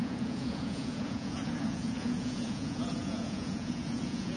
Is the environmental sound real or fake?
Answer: fake